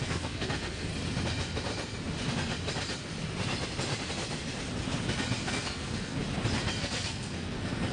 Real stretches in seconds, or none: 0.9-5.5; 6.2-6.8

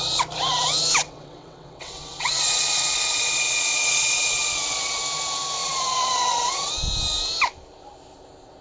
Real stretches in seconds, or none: 0.0-1.0; 5.0-5.6; 6.7-8.6